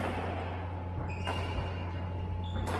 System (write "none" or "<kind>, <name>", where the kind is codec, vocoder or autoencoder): none